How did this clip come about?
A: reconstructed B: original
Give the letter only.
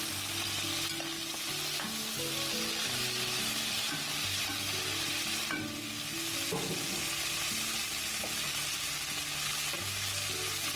B